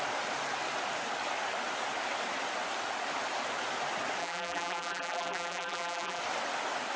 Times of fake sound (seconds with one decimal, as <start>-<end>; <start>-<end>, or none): 4.2-6.2